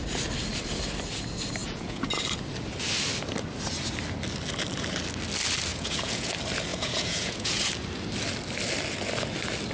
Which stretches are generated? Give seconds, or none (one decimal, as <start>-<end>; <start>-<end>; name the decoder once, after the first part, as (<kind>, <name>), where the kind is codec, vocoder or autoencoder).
1.6-2.1 (vocoder, Vocos); 5.7-6.3; 6.7-7.7